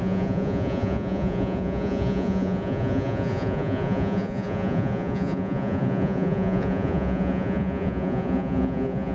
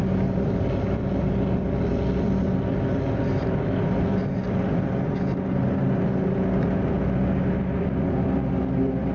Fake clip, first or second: first